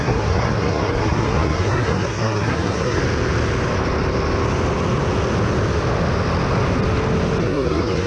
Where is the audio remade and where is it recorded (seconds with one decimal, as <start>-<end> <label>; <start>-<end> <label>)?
0.0-3.0 remade; 3.0-7.4 recorded; 7.4-8.1 remade